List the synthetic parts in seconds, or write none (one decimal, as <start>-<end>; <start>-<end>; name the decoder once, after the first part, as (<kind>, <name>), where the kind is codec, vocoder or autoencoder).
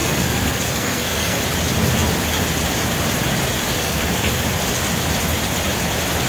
0.0-1.4 (codec, SNAC); 3.8-4.3